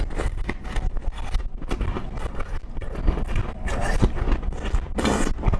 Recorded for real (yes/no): yes